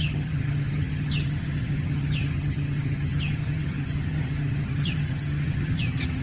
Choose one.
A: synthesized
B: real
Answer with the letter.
A